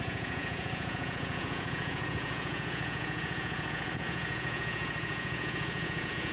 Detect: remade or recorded remade